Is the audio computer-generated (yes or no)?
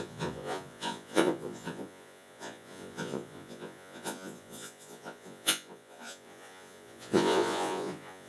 yes